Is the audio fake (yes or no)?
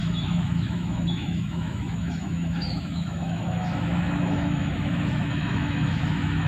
yes